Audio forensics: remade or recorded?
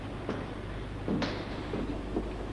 recorded